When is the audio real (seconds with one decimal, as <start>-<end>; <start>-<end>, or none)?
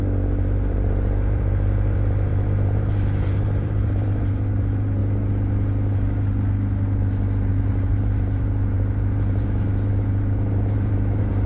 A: 5.0-7.5